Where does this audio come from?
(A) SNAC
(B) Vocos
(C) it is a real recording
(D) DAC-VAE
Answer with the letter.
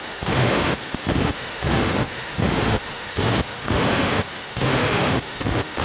D